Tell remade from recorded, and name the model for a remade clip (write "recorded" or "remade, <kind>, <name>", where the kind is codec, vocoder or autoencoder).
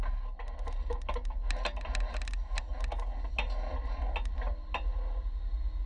recorded